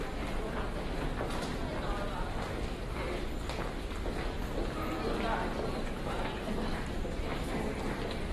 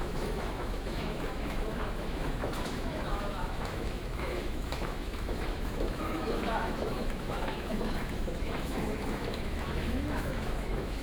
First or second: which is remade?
second